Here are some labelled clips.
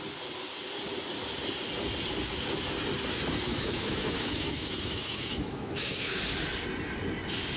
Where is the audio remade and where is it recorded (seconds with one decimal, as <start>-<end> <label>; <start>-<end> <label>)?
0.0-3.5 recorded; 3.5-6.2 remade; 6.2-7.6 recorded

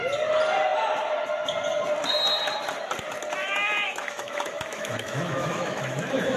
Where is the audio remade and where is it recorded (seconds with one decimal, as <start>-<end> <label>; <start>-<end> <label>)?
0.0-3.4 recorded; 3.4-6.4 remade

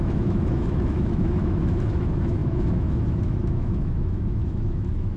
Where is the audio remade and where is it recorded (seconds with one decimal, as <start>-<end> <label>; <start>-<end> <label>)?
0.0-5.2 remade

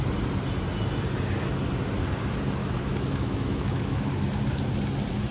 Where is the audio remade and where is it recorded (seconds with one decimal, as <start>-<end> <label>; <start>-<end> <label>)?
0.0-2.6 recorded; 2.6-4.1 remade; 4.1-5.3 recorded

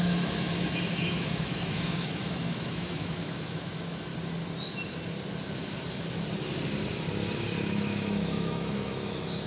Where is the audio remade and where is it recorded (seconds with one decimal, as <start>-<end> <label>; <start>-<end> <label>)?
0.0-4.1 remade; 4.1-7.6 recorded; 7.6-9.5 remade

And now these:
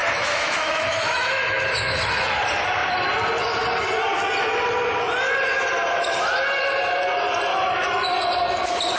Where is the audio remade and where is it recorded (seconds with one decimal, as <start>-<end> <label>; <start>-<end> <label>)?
0.0-2.0 remade; 2.0-7.5 recorded; 7.5-8.1 remade; 8.1-9.0 recorded

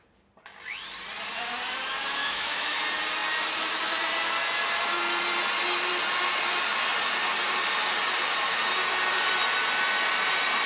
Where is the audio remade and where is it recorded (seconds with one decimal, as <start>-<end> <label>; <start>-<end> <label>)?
0.0-2.2 recorded; 2.2-2.8 remade; 2.8-10.7 recorded